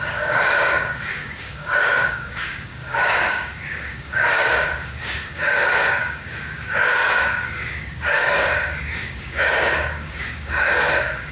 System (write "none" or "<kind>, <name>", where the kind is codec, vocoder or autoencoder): codec, DAC